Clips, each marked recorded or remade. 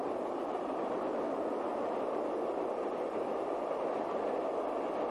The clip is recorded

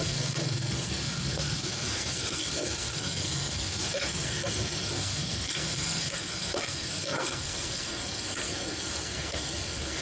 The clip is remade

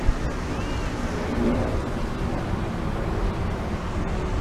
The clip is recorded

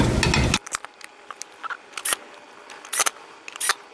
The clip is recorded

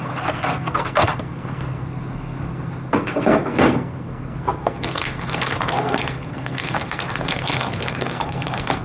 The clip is remade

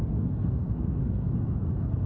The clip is remade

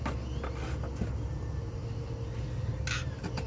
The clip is recorded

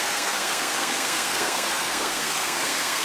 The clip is remade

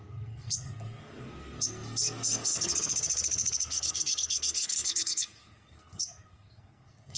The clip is remade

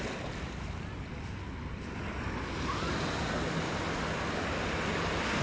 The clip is recorded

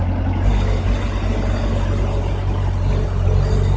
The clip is recorded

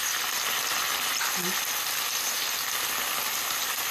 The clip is recorded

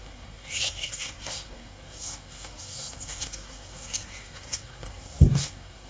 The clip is remade